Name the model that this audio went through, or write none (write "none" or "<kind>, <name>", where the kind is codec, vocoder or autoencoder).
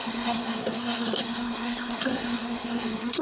codec, SNAC